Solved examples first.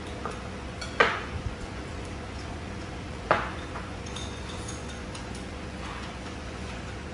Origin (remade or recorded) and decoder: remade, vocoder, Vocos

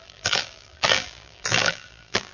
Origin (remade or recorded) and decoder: remade, vocoder, BigVGAN v2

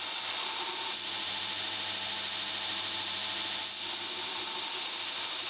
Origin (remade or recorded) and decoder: recorded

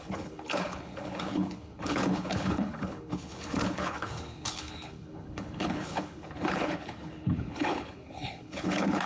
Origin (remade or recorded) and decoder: remade, codec, HILCodec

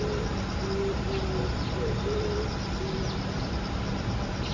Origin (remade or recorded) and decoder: recorded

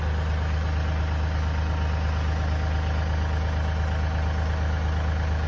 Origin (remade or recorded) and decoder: recorded